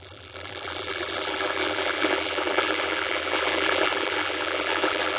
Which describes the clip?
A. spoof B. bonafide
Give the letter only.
A